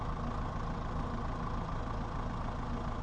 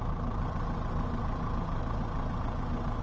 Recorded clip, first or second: first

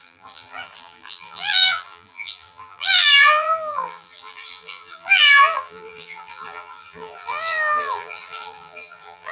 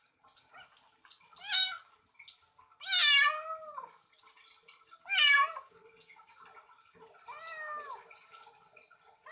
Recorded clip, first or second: second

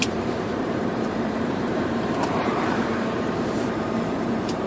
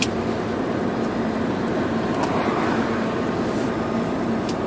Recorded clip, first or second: second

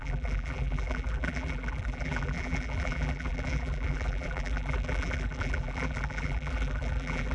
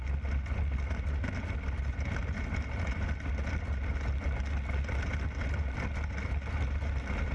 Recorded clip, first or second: second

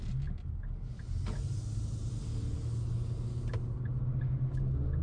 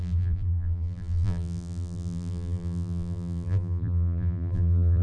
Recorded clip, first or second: first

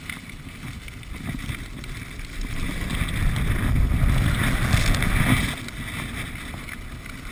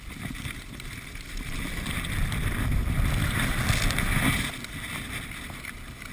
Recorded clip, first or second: first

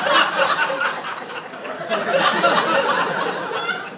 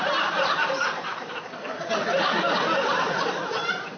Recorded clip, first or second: first